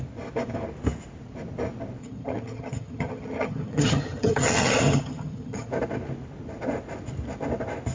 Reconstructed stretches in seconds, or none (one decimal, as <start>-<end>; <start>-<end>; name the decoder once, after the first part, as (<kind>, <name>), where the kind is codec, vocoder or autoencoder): 2.0-5.7 (vocoder, HiFi-GAN)